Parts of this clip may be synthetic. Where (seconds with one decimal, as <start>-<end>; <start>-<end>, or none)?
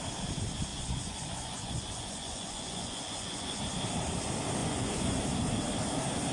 0.7-3.6; 4.6-5.2